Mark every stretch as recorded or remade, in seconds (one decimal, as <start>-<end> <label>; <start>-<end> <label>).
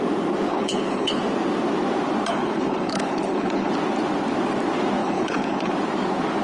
0.0-0.5 recorded; 0.5-1.2 remade; 1.2-2.3 recorded; 2.3-3.7 remade; 3.7-5.0 recorded; 5.0-5.7 remade; 5.7-6.4 recorded